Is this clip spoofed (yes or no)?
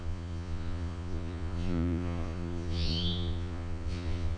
yes